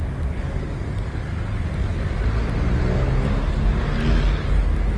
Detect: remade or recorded recorded